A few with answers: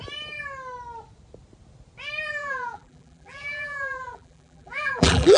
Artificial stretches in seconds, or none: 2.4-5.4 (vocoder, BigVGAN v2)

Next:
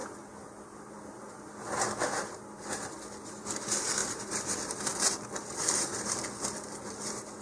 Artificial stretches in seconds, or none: none

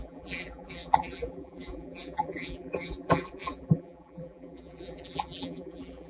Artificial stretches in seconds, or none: 0.0-6.1 (vocoder, BigVGAN v2)

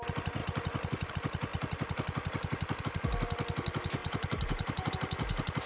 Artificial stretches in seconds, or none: 4.0-4.9 (vocoder, BigVGAN v2)

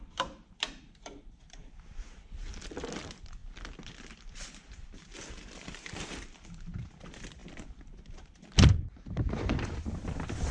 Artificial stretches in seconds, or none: 0.0-1.6 (vocoder, BigVGAN v2); 3.0-3.4; 5.2-7.4; 8.7-10.5

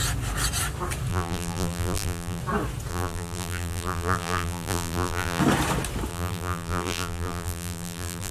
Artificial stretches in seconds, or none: 1.1-2.4 (vocoder, BigVGAN v2); 2.9-5.4; 6.1-8.3

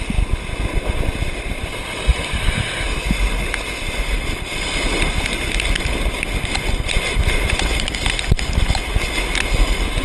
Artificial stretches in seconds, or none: 2.1-3.3 (vocoder, BigVGAN v2)

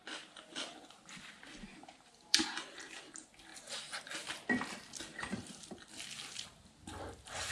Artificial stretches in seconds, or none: 1.7-3.1 (vocoder, BigVGAN v2); 3.5-4.0; 5.1-5.7